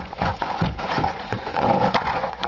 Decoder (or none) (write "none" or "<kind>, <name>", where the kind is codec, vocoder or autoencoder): vocoder, Vocos